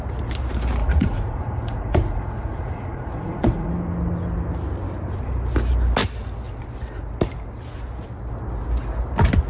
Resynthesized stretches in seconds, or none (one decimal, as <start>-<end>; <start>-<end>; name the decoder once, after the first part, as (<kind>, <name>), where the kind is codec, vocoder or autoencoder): 0.8-3.7 (vocoder, Vocos)